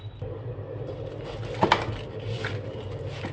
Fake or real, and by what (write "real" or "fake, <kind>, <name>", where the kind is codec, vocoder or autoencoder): real